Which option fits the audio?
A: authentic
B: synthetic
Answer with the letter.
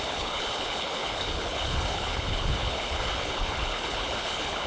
B